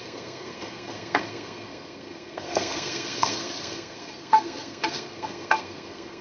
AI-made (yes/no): yes